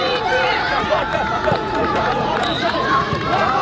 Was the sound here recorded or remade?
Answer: remade